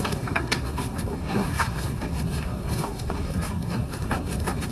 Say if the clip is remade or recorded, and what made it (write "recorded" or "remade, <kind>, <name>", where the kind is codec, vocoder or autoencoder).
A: remade, codec, SNAC